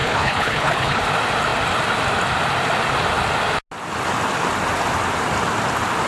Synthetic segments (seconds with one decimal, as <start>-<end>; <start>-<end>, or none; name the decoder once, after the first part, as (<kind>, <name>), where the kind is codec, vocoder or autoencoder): 0.0-1.0 (codec, HILCodec)